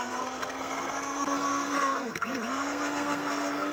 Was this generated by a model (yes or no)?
yes